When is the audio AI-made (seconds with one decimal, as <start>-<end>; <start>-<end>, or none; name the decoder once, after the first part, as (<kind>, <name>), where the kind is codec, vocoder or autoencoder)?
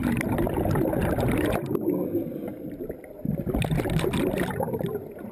none